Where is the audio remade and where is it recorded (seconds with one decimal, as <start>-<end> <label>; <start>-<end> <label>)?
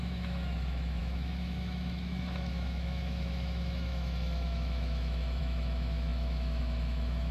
0.0-7.3 remade